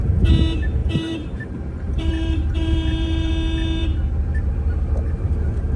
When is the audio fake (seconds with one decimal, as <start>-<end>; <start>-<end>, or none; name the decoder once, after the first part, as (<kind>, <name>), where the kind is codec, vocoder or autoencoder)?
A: 0.8-3.3 (vocoder, BigVGAN v2)